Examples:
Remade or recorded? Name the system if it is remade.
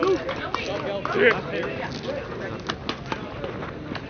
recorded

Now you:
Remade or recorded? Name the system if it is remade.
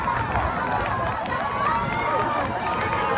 recorded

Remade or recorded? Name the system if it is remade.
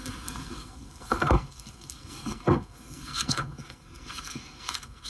remade, codec, SNAC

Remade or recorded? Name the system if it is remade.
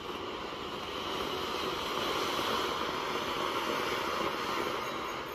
recorded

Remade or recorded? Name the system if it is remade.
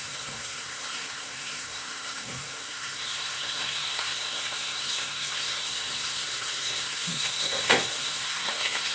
remade, codec, SNAC